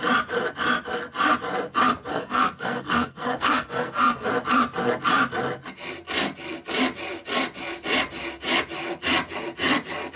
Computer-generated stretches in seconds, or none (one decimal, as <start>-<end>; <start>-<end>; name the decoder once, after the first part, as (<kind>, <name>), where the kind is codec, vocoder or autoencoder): 2.1-4.3 (codec, SNAC)